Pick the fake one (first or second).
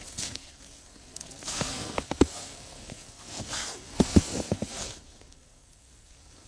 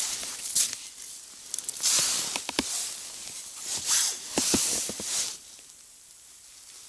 first